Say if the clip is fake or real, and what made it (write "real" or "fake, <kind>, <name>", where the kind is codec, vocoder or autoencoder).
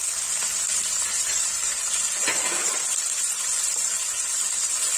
real